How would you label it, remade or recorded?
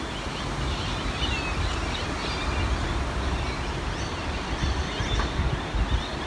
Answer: recorded